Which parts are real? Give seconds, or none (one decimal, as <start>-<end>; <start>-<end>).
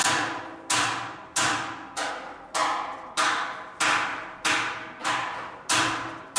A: 0.0-6.4